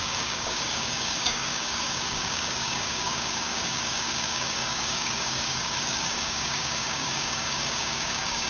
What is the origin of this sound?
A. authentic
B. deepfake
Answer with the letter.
B